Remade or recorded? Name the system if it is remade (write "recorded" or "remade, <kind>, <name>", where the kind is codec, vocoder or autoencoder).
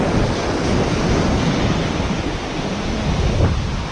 recorded